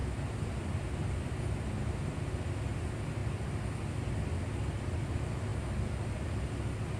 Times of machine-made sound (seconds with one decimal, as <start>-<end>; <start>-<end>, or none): 0.0-0.5